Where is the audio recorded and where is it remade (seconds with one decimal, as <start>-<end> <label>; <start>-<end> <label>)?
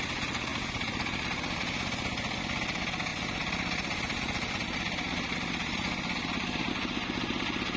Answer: 0.0-3.1 recorded; 3.1-6.7 remade; 6.7-7.8 recorded